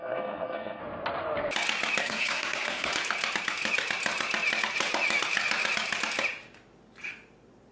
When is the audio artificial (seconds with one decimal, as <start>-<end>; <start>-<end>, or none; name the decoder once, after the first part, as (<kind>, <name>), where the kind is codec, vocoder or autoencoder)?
0.0-0.8 (codec, SNAC); 2.0-2.9